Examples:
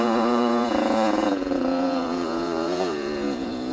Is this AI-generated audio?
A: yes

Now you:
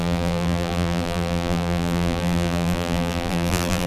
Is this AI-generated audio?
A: yes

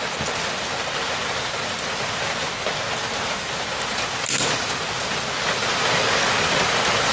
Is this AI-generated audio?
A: no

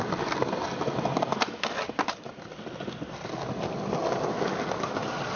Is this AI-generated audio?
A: no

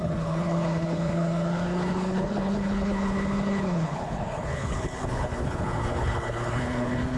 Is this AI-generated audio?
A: yes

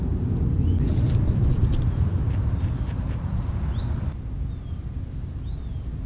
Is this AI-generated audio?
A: no